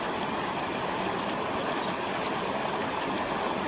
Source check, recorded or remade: recorded